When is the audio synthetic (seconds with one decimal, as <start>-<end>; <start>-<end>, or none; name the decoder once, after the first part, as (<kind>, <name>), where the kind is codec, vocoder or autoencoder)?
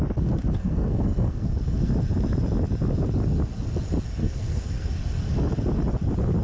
0.6-1.9 (codec, SNAC); 4.2-4.9